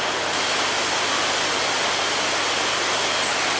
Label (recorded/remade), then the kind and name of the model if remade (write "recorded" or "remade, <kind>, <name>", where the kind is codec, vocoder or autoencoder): recorded